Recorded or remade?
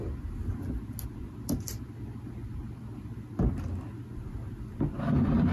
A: recorded